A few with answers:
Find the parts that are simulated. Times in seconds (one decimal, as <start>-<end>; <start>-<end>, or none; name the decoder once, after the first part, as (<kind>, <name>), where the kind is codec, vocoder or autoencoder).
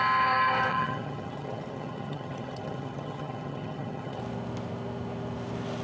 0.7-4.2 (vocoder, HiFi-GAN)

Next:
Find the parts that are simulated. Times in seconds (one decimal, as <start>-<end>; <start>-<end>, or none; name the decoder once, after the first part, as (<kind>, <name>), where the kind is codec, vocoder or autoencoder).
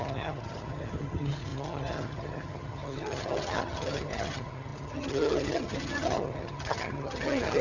0.0-7.6 (vocoder, HiFi-GAN)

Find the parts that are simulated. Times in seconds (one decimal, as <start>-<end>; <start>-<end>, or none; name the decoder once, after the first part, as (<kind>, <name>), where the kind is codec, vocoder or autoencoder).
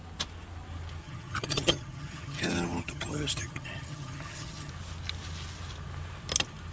1.0-4.7 (vocoder, HiFi-GAN)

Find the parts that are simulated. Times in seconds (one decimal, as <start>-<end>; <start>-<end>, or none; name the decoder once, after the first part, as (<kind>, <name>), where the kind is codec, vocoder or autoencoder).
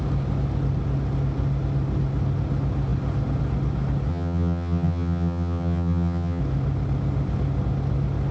4.1-6.4 (vocoder, HiFi-GAN)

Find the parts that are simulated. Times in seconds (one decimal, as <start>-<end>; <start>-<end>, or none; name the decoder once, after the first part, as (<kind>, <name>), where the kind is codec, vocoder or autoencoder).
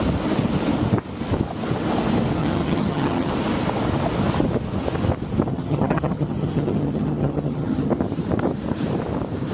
2.4-3.3 (vocoder, HiFi-GAN); 5.5-7.9